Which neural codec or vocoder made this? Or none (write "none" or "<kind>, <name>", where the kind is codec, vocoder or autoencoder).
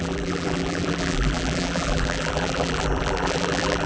vocoder, BigVGAN v2